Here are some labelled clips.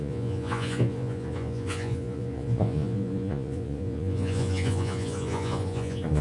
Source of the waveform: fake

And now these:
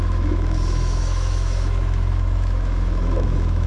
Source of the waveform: fake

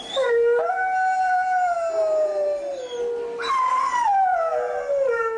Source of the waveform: real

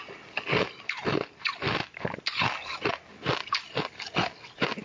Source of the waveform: real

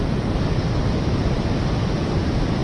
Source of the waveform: real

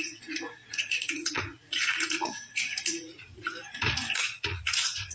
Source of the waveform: fake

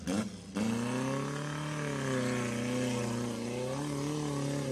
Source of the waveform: real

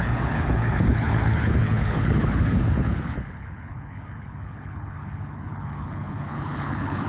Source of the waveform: fake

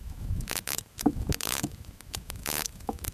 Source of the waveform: fake